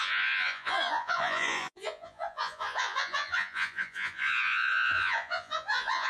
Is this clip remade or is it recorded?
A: remade